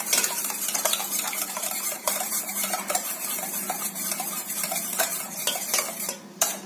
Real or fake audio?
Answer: fake